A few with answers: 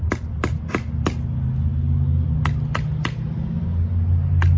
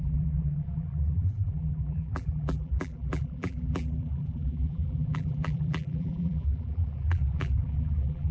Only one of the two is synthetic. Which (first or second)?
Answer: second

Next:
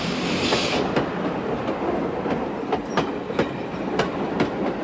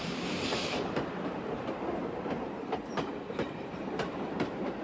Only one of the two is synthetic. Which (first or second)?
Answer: second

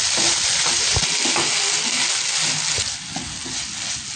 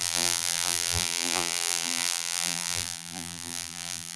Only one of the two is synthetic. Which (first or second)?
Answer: second